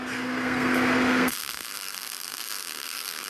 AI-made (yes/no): yes